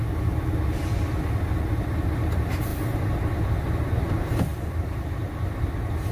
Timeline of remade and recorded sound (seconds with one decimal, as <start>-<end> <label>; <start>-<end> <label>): 0.0-4.5 recorded; 4.5-5.4 remade; 5.4-6.1 recorded